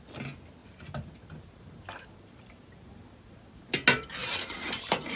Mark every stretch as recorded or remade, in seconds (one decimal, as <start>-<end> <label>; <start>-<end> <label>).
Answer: 0.0-0.6 recorded; 0.6-3.7 remade; 3.7-4.2 recorded; 4.2-5.2 remade